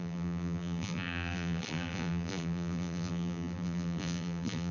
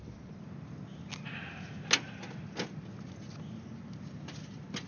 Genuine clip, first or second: second